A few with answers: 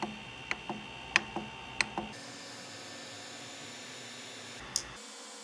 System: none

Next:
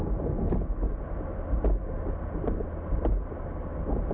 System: none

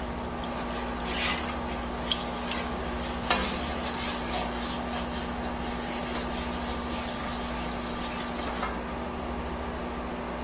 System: none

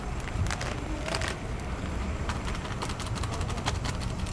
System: none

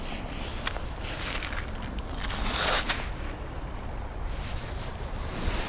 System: none